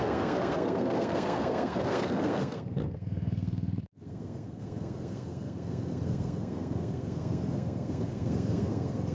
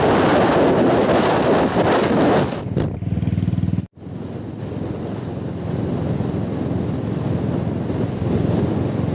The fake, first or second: first